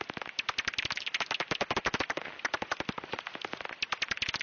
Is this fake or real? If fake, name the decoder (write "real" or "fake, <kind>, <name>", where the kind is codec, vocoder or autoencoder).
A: real